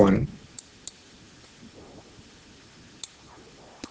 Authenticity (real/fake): real